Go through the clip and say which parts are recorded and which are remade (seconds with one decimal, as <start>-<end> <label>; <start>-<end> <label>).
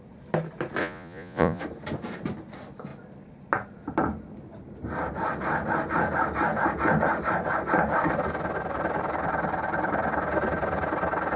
0.0-0.8 recorded; 0.8-1.6 remade; 1.6-11.4 recorded